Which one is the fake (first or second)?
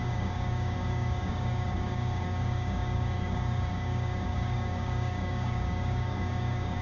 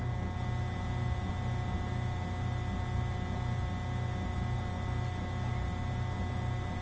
first